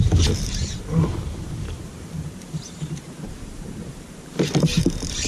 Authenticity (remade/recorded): remade